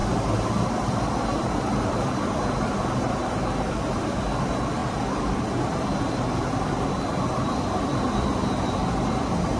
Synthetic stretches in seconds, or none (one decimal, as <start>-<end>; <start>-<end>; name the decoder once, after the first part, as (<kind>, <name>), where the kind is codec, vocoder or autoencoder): none